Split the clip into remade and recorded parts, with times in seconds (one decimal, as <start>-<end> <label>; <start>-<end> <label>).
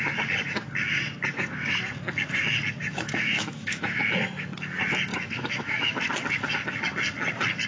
0.0-2.9 recorded; 2.9-4.0 remade; 4.0-5.1 recorded; 5.1-6.1 remade; 6.1-7.7 recorded